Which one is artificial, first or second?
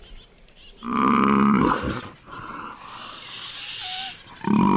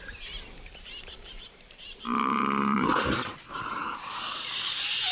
second